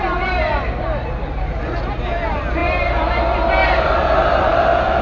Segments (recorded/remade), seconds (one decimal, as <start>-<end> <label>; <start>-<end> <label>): 0.0-2.6 recorded; 2.6-3.2 remade; 3.2-3.6 recorded; 3.6-5.0 remade